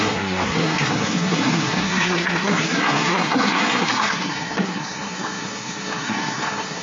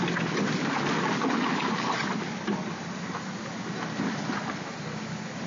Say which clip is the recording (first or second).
second